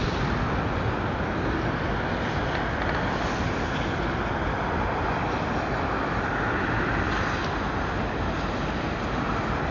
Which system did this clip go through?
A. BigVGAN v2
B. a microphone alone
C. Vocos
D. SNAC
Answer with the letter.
B